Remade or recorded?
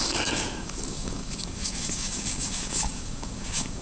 remade